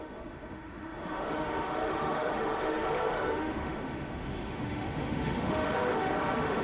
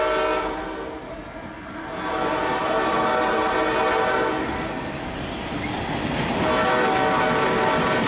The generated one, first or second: first